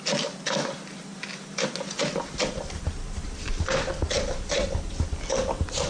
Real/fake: real